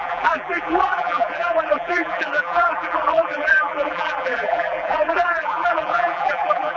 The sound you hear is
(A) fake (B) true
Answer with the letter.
A